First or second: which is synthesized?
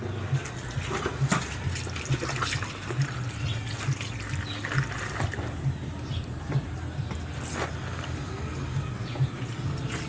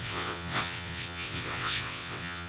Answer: second